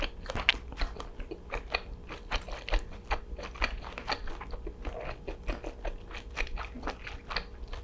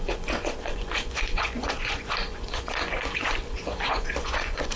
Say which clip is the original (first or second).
first